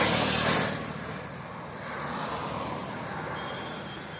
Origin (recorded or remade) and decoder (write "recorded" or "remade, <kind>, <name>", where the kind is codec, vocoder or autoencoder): recorded